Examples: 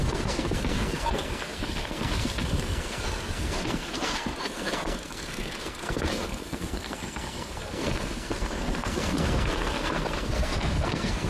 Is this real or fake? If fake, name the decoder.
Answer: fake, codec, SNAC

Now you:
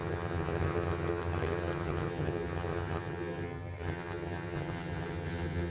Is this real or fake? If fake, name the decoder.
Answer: fake, vocoder, HiFi-GAN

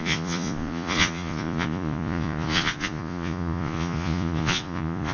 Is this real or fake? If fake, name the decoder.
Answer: fake, vocoder, Vocos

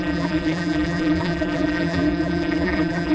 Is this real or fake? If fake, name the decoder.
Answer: fake, vocoder, BigVGAN v2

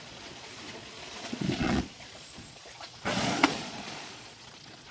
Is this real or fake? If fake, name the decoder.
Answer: fake, vocoder, Vocos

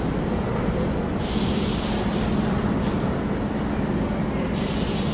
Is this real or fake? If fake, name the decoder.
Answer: real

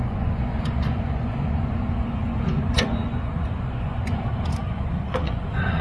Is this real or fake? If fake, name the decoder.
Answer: fake, vocoder, Vocos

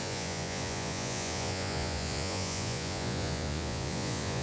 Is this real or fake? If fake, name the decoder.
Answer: fake, vocoder, Vocos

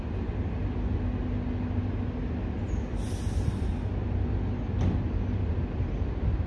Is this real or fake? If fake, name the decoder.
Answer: real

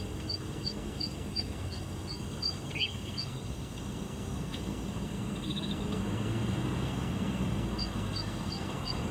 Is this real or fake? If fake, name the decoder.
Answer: fake, codec, SNAC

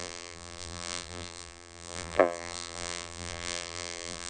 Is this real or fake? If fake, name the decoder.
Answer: fake, vocoder, BigVGAN v2